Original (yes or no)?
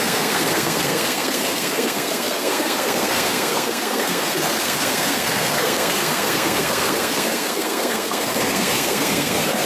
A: no